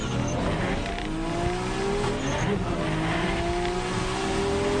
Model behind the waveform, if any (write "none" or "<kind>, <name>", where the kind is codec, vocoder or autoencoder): none